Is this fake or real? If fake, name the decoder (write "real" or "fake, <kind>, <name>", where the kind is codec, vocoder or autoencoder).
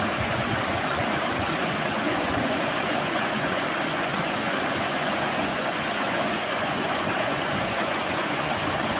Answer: fake, vocoder, Vocos